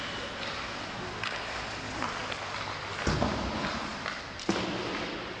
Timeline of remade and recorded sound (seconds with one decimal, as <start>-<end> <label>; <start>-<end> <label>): 0.0-5.4 recorded

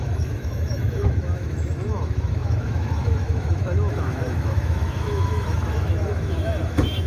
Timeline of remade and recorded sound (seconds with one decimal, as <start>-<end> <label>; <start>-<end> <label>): 0.0-7.1 remade

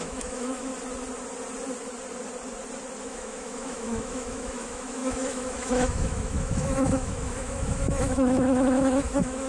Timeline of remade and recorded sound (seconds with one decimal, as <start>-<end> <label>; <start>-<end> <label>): 0.0-0.7 remade; 0.7-3.0 recorded; 3.0-9.5 remade

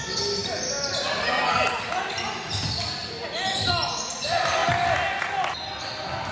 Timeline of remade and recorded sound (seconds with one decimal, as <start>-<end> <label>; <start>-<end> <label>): 0.0-6.3 recorded